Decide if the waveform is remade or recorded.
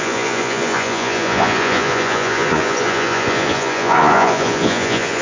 remade